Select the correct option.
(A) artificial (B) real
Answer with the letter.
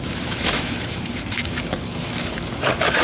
A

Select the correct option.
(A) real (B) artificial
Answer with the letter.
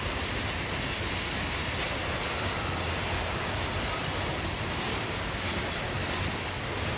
A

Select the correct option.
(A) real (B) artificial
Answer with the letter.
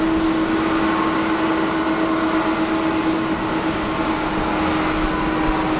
A